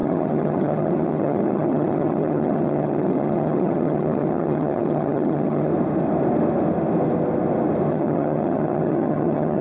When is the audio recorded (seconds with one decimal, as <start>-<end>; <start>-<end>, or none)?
5.7-7.9